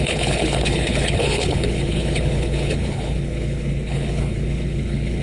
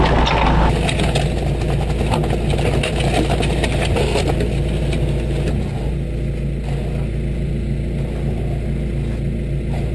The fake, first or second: first